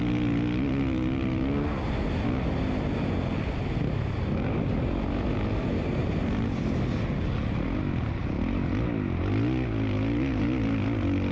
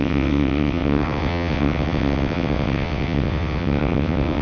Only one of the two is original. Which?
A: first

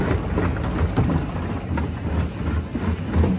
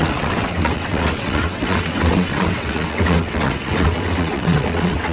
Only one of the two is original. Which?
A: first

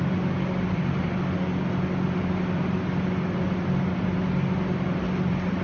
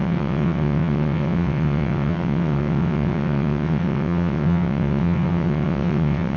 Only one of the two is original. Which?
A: first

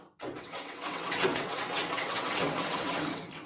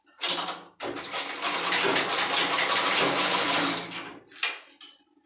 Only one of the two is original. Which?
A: second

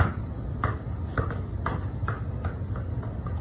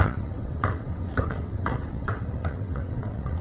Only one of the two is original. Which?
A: first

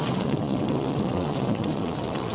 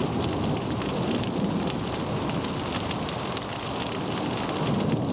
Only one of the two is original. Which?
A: second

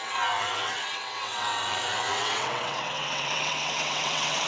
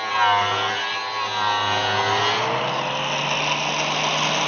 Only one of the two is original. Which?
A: second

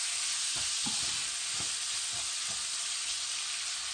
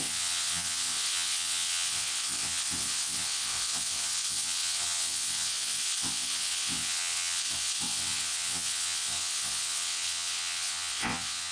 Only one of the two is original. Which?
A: first